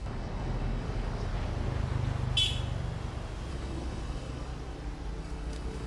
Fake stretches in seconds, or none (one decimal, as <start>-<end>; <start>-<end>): 0.0-1.3; 3.5-4.5; 5.2-5.9